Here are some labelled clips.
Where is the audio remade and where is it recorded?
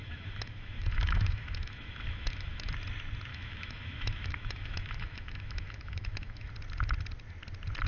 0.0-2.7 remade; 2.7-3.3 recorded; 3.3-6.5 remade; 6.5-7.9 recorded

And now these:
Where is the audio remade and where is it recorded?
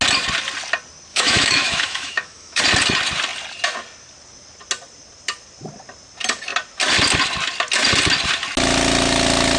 0.0-1.1 recorded; 1.1-2.6 remade; 2.6-9.6 recorded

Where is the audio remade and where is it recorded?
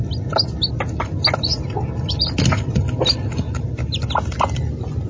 0.0-5.1 recorded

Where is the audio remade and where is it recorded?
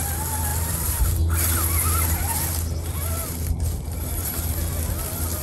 0.0-5.4 recorded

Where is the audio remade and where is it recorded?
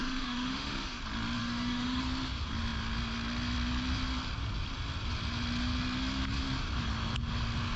0.0-1.0 remade; 1.0-1.4 recorded; 1.4-2.0 remade; 2.0-7.8 recorded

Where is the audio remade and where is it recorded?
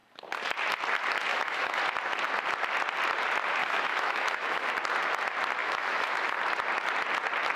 0.0-1.3 recorded; 1.3-1.8 remade; 1.8-3.6 recorded; 3.6-4.6 remade; 4.6-5.6 recorded; 5.6-6.4 remade; 6.4-7.6 recorded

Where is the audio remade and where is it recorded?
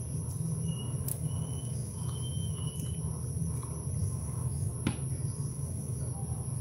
0.0-1.1 recorded; 1.1-2.7 remade; 2.7-4.0 recorded; 4.0-4.7 remade; 4.7-5.5 recorded; 5.5-6.0 remade; 6.0-6.6 recorded